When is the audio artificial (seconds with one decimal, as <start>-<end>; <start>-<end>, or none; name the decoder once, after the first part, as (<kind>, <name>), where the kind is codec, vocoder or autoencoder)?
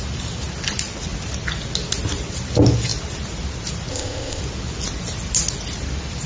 3.9-4.4 (codec, ZipCodec)